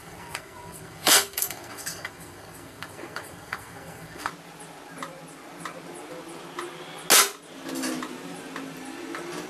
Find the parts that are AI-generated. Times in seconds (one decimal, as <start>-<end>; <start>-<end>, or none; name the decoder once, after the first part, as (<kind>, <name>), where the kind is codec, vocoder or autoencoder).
0.0-4.3 (codec, SNAC)

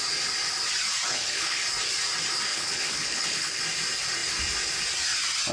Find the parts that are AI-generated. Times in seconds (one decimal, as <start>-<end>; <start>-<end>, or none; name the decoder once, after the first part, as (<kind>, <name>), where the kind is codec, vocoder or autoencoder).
1.1-1.6 (codec, HILCodec); 2.5-3.6

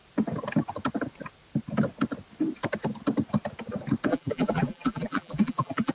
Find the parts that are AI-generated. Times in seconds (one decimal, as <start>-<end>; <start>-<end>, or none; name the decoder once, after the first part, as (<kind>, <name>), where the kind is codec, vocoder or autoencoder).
4.1-5.9 (vocoder, BigVGAN v2)

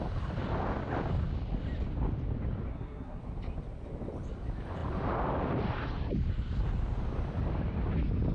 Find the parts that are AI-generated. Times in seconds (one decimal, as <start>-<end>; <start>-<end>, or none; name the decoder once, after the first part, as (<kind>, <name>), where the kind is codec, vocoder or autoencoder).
2.7-3.2 (codec, SNAC)

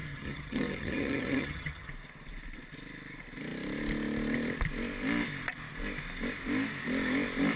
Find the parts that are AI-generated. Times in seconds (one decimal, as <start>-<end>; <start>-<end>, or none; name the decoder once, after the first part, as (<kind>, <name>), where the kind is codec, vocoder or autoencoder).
0.0-1.9 (vocoder, HiFi-GAN)

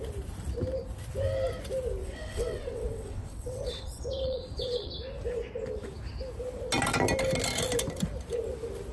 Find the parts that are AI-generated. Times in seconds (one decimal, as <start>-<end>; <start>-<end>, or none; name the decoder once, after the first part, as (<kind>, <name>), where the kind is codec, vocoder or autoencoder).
2.0-4.9 (vocoder, WaveNeXt)

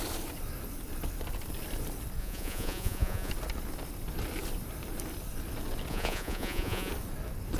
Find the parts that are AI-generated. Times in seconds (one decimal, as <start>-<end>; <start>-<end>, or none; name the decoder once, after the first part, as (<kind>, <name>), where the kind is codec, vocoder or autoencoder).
2.2-3.3 (vocoder, Vocos); 5.9-6.9